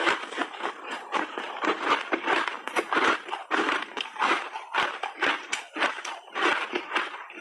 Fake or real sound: fake